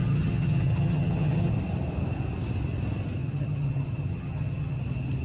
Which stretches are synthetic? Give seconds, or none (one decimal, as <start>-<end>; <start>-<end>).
0.0-1.5; 3.2-4.8